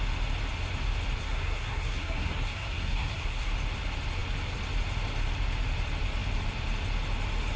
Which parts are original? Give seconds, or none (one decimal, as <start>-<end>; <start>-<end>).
0.0-1.2; 3.5-7.6

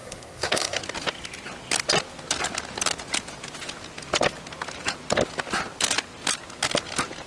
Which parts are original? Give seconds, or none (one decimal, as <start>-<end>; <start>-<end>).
0.8-7.3